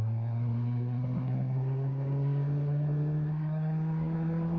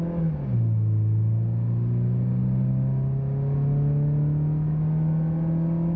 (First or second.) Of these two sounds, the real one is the second